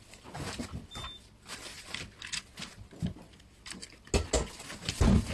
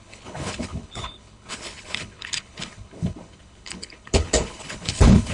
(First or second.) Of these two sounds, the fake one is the second